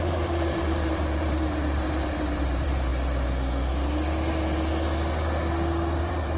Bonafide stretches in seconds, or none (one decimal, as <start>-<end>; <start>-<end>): 2.9-6.0